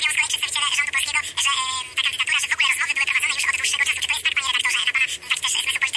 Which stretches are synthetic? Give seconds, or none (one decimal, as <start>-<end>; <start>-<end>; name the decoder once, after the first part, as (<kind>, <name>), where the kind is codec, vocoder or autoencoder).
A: none